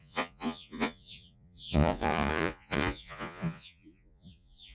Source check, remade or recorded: remade